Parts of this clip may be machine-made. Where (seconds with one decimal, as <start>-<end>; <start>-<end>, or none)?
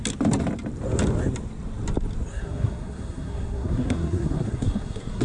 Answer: 2.3-5.2